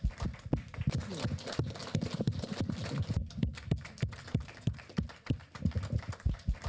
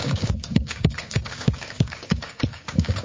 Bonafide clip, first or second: first